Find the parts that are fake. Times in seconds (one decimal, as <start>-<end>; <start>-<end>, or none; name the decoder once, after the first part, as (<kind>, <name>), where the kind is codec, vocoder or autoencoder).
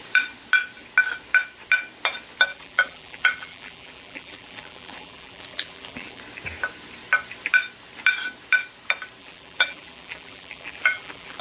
2.5-6.2 (vocoder, BigVGAN v2); 9.2-11.4